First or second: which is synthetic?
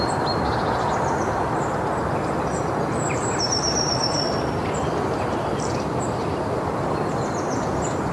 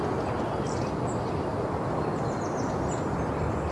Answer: first